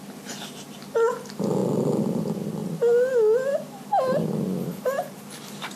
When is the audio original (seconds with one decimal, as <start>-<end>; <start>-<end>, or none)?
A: 0.0-5.8